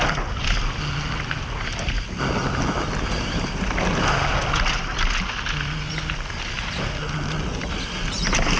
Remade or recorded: recorded